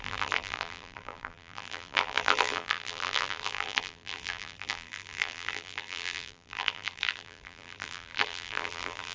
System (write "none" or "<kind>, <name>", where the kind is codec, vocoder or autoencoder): vocoder, BigVGAN v2